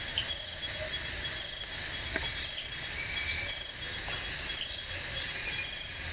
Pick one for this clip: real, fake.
real